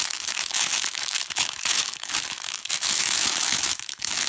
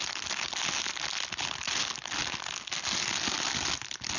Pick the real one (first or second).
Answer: second